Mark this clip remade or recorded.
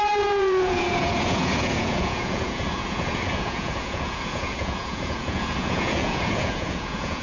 remade